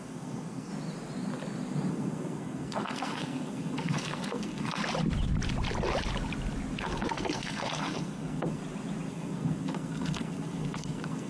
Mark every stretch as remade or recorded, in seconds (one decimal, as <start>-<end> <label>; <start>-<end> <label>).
0.0-0.7 remade; 0.7-1.9 recorded; 1.9-4.8 remade; 4.8-6.8 recorded; 6.8-8.6 remade; 8.6-9.1 recorded; 9.1-11.3 remade